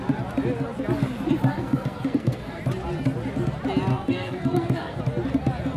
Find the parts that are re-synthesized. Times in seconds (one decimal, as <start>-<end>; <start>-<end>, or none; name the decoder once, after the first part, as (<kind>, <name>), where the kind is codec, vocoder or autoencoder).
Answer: 1.5-2.6 (codec, SNAC); 3.9-5.0